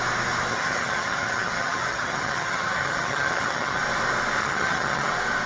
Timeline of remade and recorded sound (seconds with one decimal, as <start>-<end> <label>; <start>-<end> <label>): 0.0-0.5 recorded; 0.5-3.8 remade; 3.8-4.4 recorded; 4.4-5.1 remade; 5.1-5.5 recorded